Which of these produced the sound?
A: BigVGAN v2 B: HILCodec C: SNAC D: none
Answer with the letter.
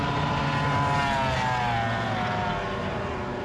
D